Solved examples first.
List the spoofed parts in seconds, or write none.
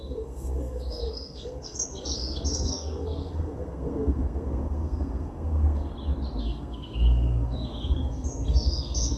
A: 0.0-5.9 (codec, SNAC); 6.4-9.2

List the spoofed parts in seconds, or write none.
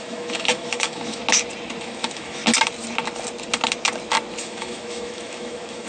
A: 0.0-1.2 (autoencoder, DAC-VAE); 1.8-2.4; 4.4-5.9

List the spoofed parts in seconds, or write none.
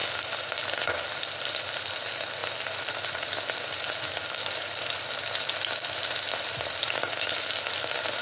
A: none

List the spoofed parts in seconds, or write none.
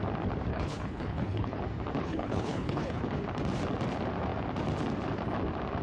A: 0.5-1.6 (codec, HILCodec); 2.0-3.0